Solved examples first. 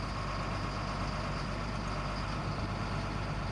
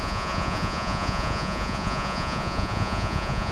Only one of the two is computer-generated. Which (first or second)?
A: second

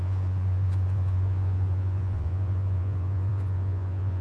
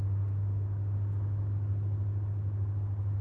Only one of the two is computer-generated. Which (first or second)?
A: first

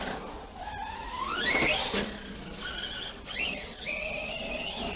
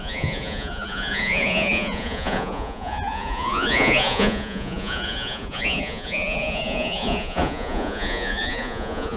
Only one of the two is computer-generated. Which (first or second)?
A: second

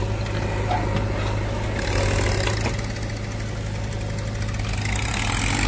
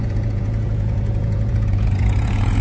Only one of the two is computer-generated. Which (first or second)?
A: second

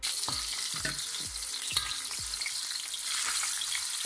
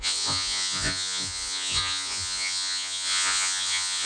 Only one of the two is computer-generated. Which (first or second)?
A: second